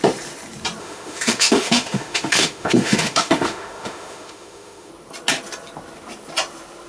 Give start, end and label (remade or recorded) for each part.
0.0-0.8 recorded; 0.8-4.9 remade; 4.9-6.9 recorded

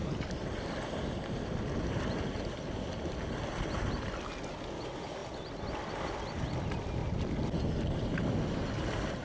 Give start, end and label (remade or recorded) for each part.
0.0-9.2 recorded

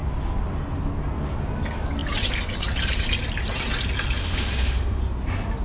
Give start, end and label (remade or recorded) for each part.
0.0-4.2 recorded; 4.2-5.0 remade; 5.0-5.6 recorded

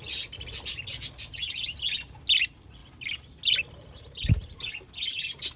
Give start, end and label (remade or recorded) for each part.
0.0-5.6 recorded